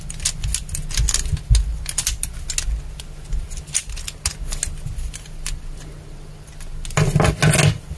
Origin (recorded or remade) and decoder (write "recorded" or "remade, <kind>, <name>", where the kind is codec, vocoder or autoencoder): recorded